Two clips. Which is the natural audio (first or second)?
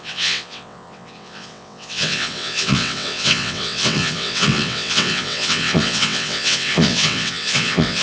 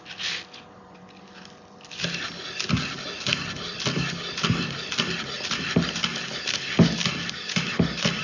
second